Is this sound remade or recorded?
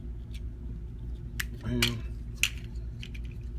recorded